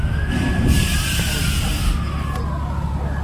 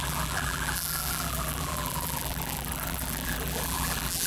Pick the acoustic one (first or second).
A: first